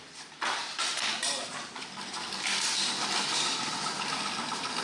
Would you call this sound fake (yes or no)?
no